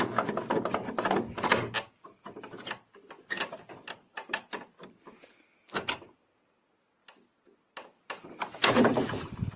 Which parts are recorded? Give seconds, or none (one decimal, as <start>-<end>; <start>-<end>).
0.0-9.6